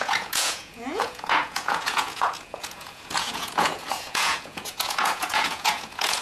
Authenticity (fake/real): fake